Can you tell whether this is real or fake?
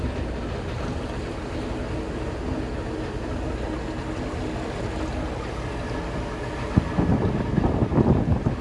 real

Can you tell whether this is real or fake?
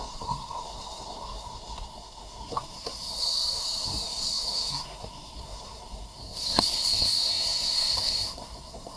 fake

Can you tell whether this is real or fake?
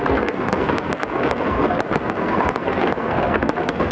fake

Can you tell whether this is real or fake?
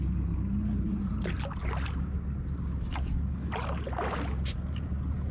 real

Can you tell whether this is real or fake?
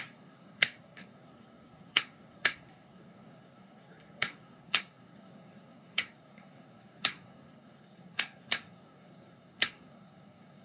fake